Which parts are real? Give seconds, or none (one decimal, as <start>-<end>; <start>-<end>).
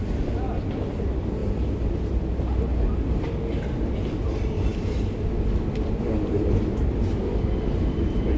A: 0.0-8.4